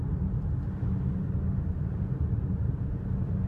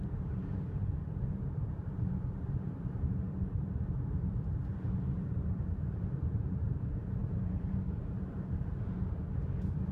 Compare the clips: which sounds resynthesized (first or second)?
second